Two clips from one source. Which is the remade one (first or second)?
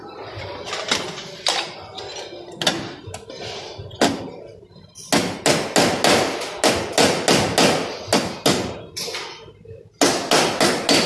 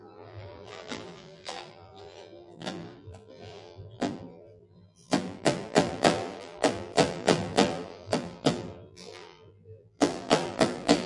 second